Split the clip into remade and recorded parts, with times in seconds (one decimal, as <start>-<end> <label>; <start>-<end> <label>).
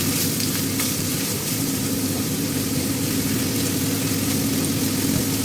0.0-1.1 recorded; 1.1-3.4 remade; 3.4-5.4 recorded